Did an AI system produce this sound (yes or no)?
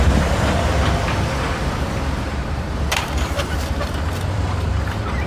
yes